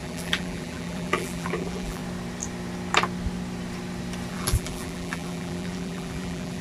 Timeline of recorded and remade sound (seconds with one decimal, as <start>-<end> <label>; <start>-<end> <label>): 0.0-2.0 remade; 2.0-4.3 recorded; 4.3-6.6 remade